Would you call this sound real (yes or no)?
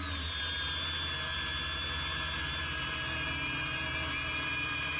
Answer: yes